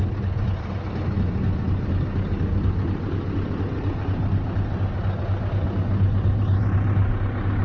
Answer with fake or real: real